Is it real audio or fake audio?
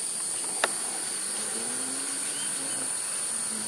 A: real